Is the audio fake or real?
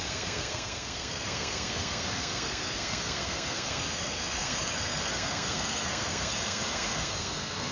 fake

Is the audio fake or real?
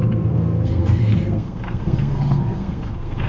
fake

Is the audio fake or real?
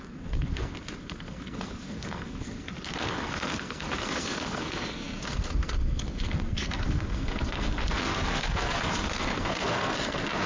fake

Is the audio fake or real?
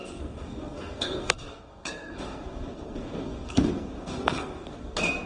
fake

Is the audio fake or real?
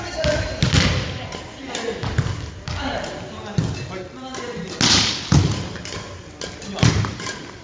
real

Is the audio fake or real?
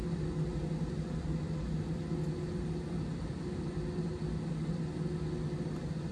real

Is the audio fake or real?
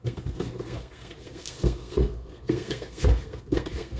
fake